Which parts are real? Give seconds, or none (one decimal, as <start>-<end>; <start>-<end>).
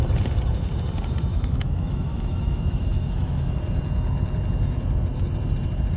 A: 0.0-1.3; 3.6-6.0